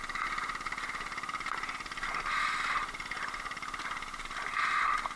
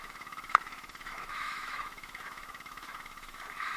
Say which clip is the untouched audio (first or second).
first